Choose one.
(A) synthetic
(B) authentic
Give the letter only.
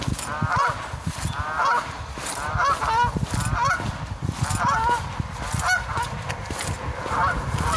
B